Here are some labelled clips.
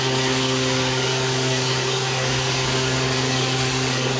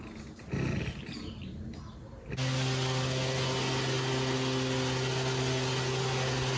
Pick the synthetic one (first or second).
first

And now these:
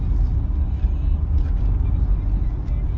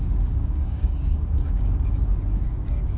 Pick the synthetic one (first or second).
second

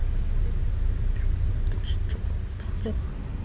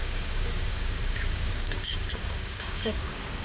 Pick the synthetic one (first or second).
second